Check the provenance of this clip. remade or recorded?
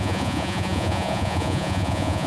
remade